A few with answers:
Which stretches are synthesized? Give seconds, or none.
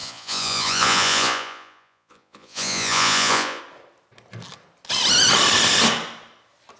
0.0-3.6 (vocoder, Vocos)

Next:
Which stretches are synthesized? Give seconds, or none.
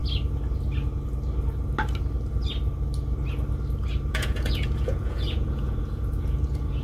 4.1-6.8 (vocoder, Vocos)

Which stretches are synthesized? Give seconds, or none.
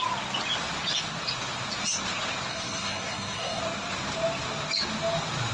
2.5-3.6 (codec, SNAC)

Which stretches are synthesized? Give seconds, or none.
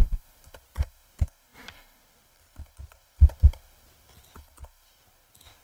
1.5-4.1 (vocoder, BigVGAN v2)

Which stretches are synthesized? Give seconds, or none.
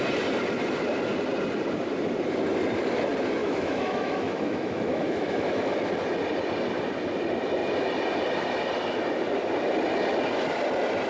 3.4-5.8 (autoencoder, DAC-VAE)